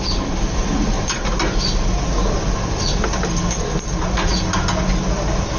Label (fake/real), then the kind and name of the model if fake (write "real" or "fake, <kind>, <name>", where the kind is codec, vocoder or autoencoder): real